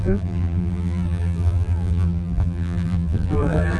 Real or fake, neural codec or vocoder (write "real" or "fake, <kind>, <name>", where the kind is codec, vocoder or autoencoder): fake, vocoder, BigVGAN v2